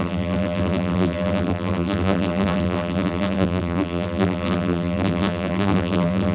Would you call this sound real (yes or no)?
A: no